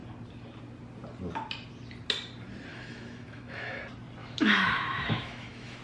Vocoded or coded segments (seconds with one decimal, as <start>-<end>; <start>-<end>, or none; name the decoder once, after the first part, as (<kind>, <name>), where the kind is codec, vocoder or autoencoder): 2.7-3.8 (autoencoder, DAC-VAE); 4.2-5.8